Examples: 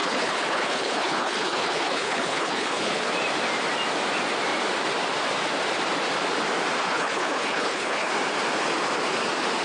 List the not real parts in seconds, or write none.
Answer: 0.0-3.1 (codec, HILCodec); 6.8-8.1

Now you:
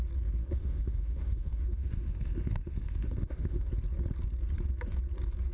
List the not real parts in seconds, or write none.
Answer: 0.4-3.7 (autoencoder, DAC-VAE)

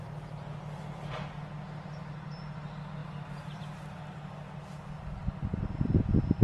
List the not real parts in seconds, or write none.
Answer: 3.0-3.6 (vocoder, BigVGAN v2)

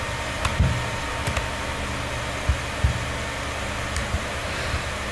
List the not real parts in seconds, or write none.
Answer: 0.0-1.1 (vocoder, BigVGAN v2); 4.2-5.1

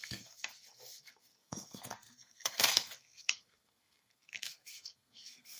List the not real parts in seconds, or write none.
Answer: 0.0-5.6 (codec, SNAC)

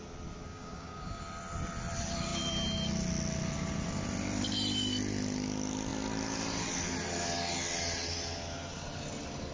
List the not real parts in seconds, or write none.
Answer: 0.5-1.2 (codec, DAC)

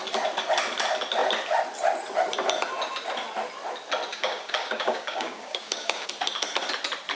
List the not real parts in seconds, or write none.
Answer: 4.1-6.1 (codec, DAC)

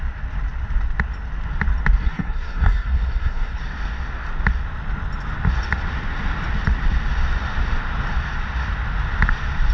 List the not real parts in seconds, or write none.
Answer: 2.0-3.6 (codec, SNAC)